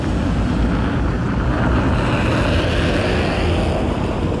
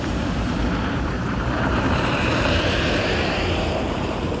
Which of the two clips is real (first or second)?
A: first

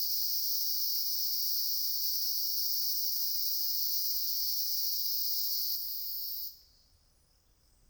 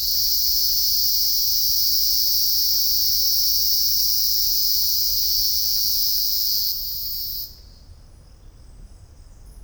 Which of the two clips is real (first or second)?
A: second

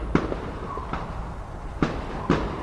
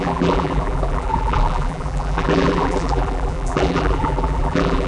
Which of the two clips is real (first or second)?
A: first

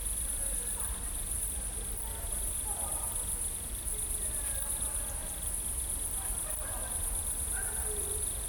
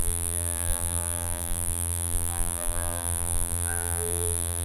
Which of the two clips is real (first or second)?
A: first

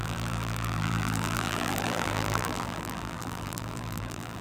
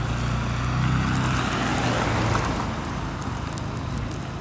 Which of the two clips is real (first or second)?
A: second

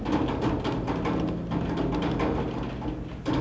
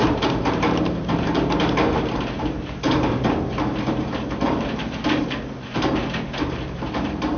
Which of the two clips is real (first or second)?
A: first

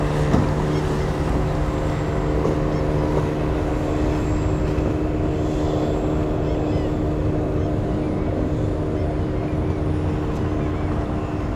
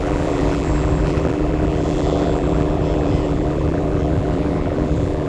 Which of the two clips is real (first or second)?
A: first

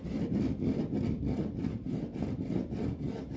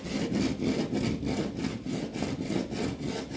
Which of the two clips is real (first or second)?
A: second